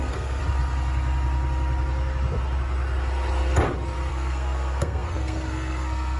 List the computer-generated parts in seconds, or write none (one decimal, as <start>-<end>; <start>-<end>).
0.0-0.4; 4.1-6.2